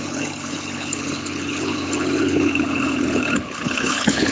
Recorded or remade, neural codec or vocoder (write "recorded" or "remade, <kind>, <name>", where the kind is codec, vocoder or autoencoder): remade, codec, HILCodec